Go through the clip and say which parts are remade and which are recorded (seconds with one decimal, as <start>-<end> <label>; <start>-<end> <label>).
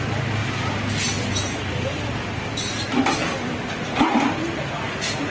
0.0-5.3 recorded